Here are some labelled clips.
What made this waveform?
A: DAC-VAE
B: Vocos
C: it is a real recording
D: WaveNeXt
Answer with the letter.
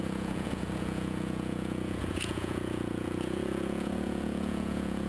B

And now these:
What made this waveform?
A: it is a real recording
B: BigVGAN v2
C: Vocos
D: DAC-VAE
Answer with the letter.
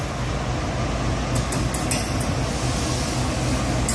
A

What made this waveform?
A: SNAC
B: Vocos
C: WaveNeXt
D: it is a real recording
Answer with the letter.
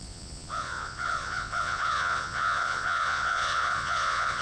B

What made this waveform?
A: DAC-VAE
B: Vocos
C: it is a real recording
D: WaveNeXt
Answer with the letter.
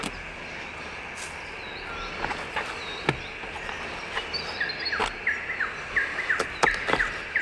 C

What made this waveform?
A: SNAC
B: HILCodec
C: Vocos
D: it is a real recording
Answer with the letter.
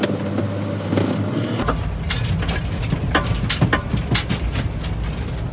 D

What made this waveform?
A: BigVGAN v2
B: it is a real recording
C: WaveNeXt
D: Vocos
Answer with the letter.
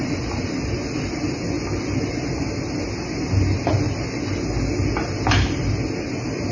B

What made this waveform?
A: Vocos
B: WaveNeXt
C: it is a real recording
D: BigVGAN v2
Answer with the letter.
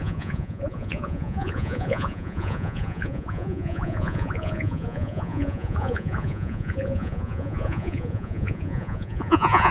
A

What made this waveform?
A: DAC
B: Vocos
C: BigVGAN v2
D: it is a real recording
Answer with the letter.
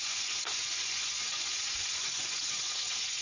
B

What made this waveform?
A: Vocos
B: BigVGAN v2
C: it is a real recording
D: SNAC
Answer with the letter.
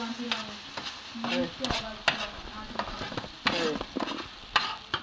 C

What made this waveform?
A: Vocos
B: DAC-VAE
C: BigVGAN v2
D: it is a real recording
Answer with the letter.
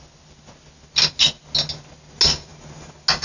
D